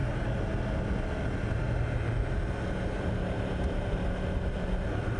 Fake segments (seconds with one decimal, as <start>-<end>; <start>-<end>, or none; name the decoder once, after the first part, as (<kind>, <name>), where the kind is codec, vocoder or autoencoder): none